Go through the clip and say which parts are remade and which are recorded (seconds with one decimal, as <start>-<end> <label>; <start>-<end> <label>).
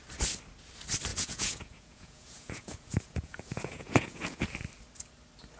0.0-1.1 recorded; 1.1-4.5 remade; 4.5-5.6 recorded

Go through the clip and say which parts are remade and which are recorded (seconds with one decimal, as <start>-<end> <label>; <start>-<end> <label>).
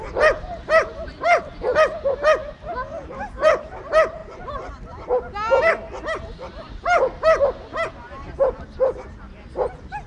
0.0-10.1 recorded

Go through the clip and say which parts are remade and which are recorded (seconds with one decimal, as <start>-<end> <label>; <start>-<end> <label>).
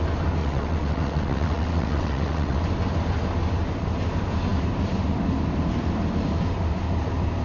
0.0-0.4 recorded; 0.4-2.6 remade; 2.6-7.4 recorded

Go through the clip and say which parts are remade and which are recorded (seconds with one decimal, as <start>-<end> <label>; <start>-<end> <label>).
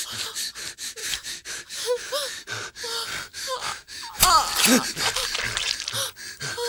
0.0-1.0 recorded; 1.0-2.1 remade; 2.1-3.3 recorded; 3.3-4.1 remade; 4.1-6.7 recorded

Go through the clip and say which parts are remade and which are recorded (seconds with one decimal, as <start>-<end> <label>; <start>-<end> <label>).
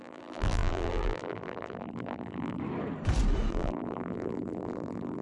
0.0-2.6 remade; 2.6-3.5 recorded; 3.5-5.2 remade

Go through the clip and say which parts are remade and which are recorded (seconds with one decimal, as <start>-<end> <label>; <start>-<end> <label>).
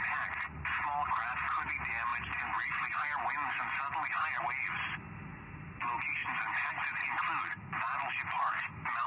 0.0-9.1 recorded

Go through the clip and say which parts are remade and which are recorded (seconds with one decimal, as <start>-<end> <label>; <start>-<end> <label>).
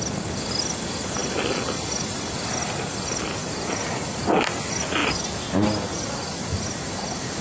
0.0-7.4 recorded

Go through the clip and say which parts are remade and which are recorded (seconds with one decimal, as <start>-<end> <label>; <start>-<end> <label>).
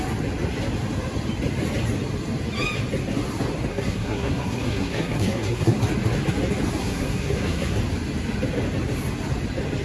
0.0-3.7 recorded; 3.7-5.8 remade; 5.8-6.8 recorded; 6.8-7.8 remade; 7.8-9.8 recorded